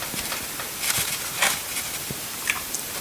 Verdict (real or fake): fake